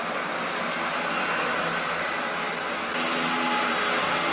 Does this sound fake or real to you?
real